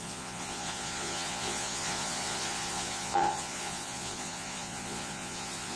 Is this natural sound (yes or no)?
no